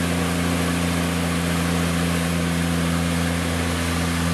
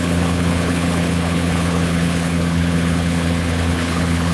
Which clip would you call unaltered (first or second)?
first